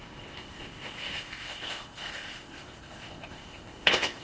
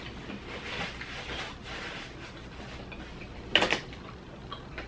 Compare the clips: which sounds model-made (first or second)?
first